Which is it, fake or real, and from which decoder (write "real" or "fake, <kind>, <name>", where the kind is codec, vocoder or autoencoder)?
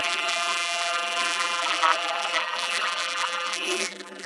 fake, vocoder, BigVGAN v2